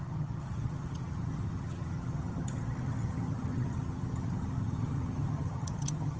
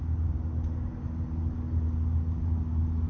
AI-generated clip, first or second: first